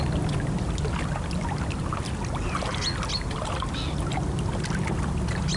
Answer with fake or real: real